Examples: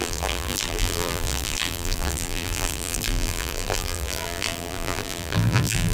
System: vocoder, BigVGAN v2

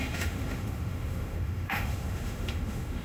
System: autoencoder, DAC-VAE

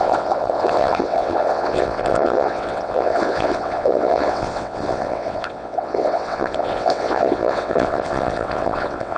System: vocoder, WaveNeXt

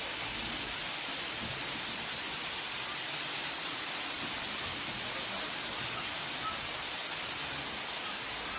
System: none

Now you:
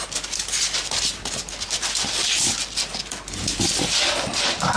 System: none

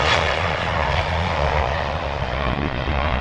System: vocoder, Vocos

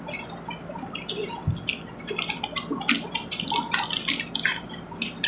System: none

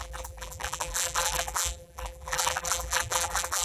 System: vocoder, BigVGAN v2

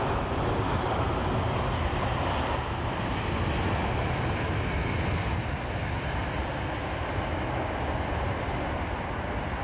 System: none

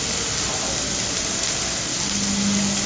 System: none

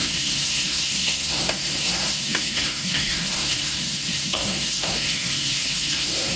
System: codec, SNAC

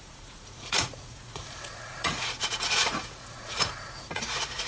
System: vocoder, Vocos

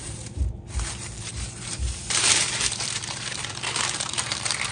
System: vocoder, BigVGAN v2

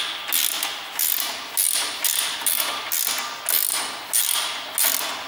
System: none